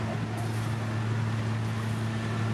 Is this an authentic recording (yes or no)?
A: yes